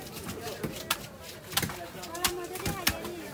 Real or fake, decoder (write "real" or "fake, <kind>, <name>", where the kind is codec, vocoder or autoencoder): real